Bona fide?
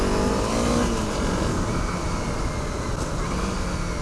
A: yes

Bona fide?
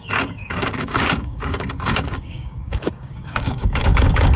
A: no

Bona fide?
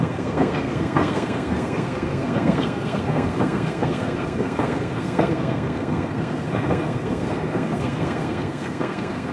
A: no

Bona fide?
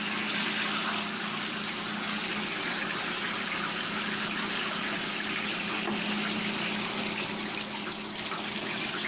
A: yes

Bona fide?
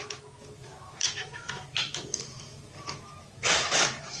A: no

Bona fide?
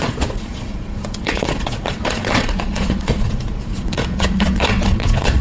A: no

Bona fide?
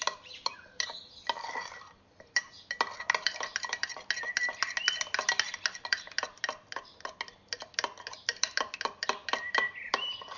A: yes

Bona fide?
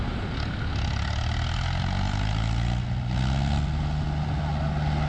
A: yes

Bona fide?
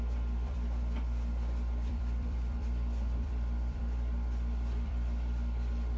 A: no